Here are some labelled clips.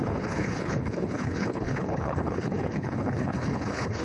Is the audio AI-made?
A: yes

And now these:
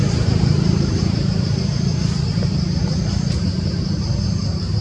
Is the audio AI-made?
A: yes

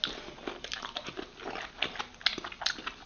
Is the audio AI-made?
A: no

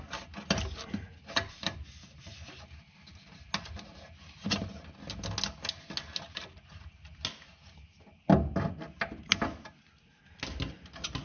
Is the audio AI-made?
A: no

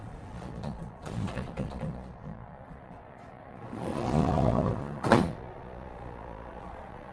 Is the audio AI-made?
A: yes